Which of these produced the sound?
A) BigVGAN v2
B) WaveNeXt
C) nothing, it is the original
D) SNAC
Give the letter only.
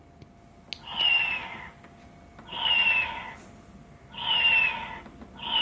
C